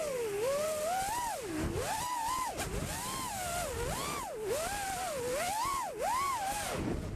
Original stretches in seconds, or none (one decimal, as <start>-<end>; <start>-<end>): 0.0-7.2